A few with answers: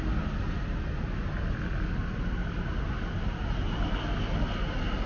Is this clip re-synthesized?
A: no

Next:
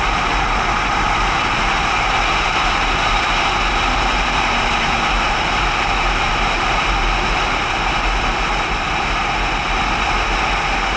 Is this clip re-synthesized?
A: no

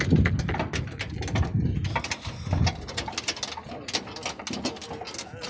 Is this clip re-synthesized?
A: no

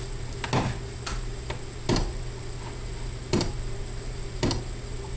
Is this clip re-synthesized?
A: no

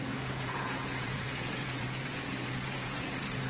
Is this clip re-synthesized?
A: yes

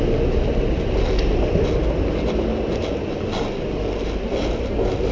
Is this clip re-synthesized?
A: no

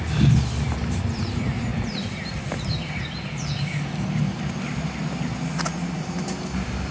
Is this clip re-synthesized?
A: no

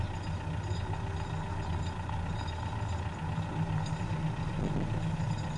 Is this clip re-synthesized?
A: no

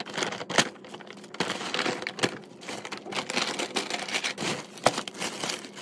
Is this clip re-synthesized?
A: no